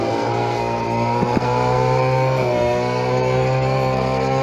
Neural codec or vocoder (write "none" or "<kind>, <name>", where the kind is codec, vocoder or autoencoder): codec, SNAC